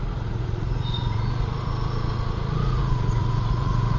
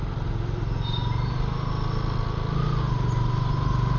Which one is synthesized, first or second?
first